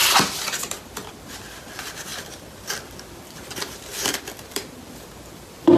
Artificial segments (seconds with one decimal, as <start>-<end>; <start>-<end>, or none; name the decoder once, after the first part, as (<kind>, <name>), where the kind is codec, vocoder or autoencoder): 0.0-1.1 (vocoder, BigVGAN v2); 2.1-5.8